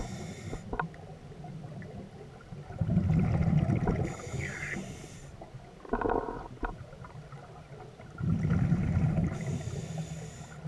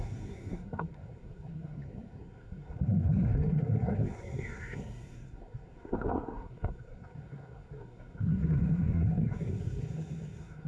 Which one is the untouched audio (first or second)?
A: first